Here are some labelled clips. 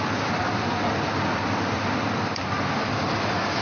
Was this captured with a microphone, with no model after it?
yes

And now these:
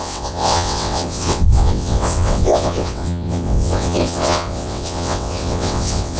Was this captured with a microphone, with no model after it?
no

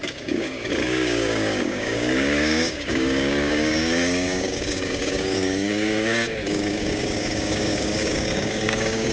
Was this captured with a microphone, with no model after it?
no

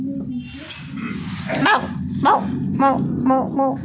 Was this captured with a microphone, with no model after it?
yes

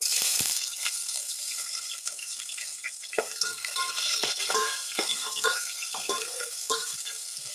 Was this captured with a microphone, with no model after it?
no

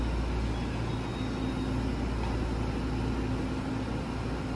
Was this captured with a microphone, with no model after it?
yes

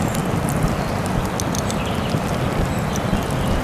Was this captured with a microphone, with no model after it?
yes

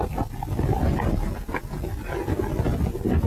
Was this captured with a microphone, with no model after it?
yes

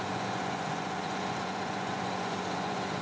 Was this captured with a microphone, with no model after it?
no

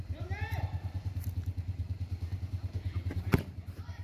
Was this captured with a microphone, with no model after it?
no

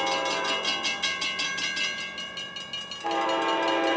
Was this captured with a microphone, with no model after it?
yes